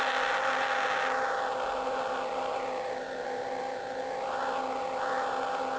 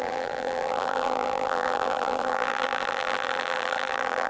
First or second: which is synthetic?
second